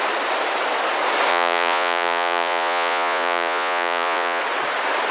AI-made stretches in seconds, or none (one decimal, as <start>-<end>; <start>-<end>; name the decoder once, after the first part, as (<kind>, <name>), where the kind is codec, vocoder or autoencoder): 1.3-4.4 (vocoder, Vocos)